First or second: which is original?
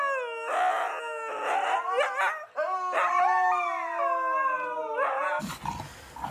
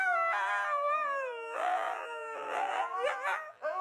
first